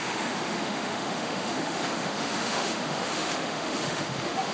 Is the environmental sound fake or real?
fake